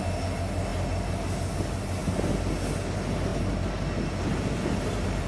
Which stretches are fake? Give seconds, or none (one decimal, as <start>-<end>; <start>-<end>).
none